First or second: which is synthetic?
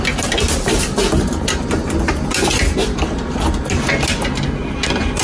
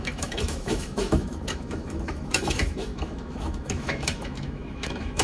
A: second